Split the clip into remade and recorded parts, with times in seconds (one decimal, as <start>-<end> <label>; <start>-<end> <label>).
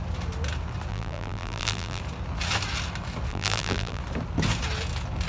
0.0-0.9 recorded; 0.9-2.0 remade; 2.0-3.3 recorded; 3.3-4.0 remade; 4.0-5.3 recorded